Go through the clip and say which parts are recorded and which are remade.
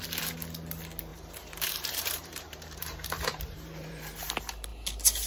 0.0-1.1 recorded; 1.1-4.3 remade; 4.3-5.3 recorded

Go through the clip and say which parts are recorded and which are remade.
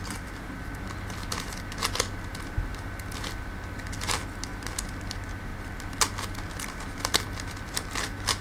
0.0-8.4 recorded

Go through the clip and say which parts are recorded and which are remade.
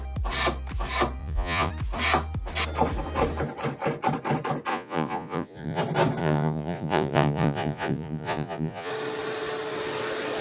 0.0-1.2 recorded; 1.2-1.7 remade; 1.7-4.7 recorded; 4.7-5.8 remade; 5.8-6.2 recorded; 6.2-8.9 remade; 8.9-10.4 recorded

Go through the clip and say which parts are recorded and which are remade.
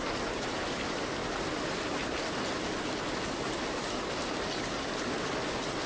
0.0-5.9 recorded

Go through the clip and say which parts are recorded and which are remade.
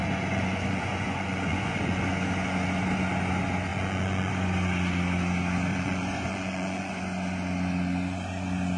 0.0-2.0 remade; 2.0-3.7 recorded; 3.7-4.3 remade; 4.3-5.7 recorded; 5.7-6.9 remade; 6.9-8.8 recorded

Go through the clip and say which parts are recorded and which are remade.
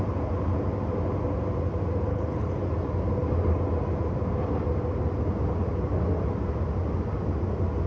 0.0-2.1 recorded; 2.1-2.6 remade; 2.6-7.9 recorded